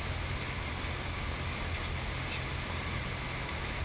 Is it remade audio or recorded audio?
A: recorded